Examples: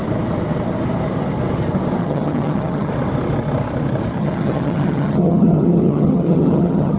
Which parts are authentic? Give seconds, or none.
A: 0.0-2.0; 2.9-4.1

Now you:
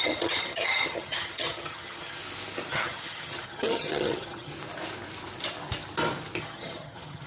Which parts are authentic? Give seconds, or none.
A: 2.2-2.7; 4.5-6.4

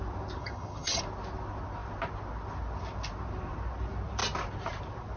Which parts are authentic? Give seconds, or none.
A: 0.0-0.4; 1.0-5.2

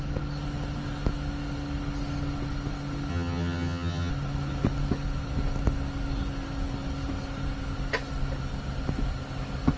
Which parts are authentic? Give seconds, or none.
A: 0.0-3.1; 4.1-9.8

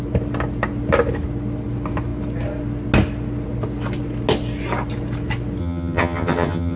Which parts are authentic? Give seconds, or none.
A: 0.0-5.6

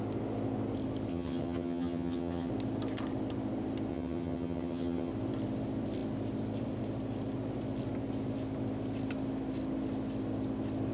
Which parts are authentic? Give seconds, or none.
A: 0.0-1.1; 2.5-3.9; 5.1-10.9

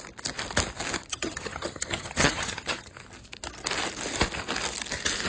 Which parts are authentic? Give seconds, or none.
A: 0.0-1.1; 2.9-5.3

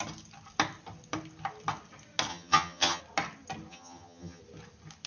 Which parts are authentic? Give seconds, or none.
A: 0.0-2.3; 3.0-3.7; 4.4-5.1